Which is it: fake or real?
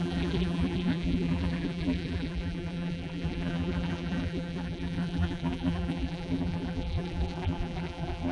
fake